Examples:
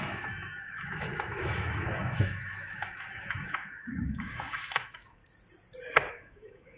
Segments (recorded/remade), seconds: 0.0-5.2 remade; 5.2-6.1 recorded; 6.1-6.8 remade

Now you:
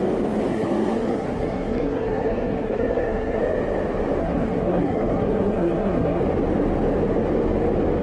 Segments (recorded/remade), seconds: 0.0-0.5 recorded; 0.5-3.4 remade; 3.4-4.2 recorded; 4.2-6.2 remade; 6.2-8.0 recorded